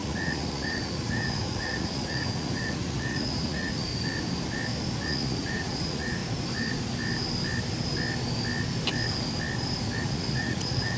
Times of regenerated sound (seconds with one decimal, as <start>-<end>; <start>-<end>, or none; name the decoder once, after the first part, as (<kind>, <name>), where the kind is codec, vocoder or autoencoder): 0.0-3.9 (vocoder, Vocos); 5.1-6.2; 10.0-11.0